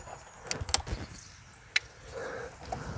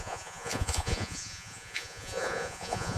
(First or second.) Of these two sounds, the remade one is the second